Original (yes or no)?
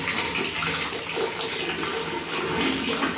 yes